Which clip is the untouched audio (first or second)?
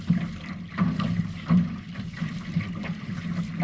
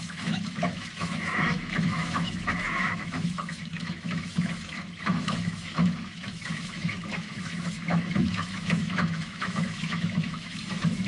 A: first